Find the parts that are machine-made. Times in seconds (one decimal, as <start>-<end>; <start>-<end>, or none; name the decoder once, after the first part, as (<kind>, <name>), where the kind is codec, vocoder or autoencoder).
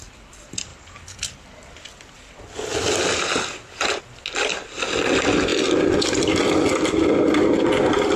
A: none